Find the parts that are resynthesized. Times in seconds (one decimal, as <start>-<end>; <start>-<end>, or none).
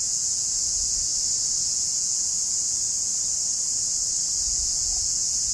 0.0-1.1; 1.6-3.1; 4.4-5.5